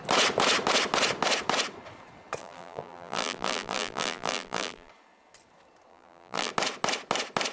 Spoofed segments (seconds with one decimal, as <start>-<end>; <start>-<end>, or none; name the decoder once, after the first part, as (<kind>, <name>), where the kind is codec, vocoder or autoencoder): 2.4-4.9 (vocoder, BigVGAN v2); 5.9-6.5